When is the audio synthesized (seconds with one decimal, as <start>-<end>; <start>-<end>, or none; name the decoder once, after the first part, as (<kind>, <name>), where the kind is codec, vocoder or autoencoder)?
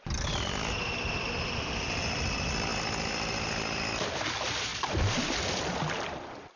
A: none